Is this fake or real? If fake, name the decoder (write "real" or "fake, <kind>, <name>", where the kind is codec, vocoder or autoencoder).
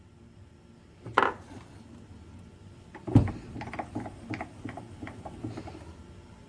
real